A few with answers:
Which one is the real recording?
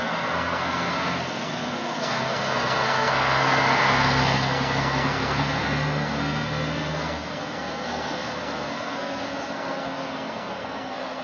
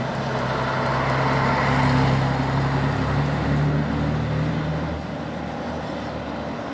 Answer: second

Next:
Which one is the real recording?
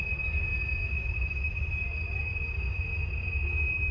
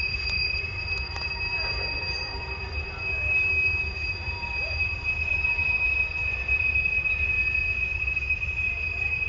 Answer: first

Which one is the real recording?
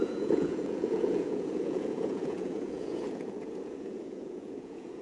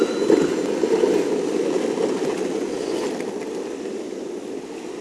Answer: second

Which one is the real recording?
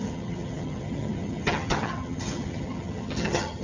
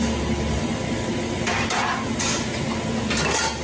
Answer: second